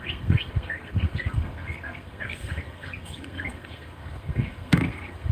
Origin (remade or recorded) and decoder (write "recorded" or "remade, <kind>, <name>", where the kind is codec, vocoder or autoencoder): remade, codec, SNAC